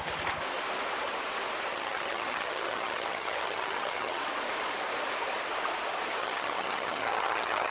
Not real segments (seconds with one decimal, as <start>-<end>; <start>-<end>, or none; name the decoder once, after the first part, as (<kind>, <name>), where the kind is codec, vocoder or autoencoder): 1.7-4.2 (vocoder, HiFi-GAN); 6.2-7.7